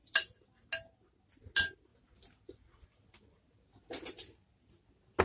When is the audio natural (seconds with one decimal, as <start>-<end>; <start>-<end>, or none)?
0.0-5.2